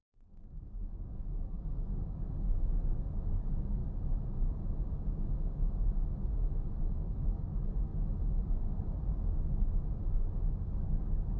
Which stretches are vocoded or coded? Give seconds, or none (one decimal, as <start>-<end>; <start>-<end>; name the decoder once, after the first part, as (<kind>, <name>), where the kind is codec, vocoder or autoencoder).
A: 0.0-3.8 (codec, DAC); 6.8-7.9; 10.5-11.4